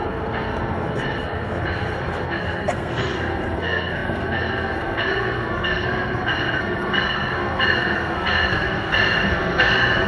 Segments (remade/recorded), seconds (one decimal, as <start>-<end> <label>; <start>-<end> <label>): 0.0-10.1 remade